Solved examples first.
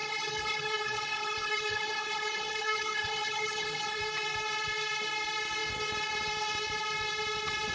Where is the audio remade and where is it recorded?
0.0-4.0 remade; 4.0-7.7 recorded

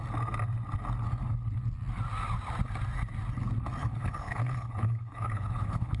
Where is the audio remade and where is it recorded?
0.0-3.8 recorded; 3.8-6.0 remade

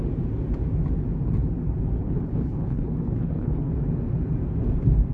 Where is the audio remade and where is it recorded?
0.0-2.0 recorded; 2.0-3.7 remade; 3.7-5.1 recorded

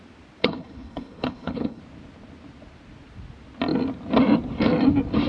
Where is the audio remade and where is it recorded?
0.0-0.4 recorded; 0.4-1.8 remade; 1.8-5.3 recorded